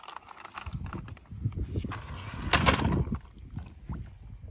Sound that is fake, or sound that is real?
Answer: real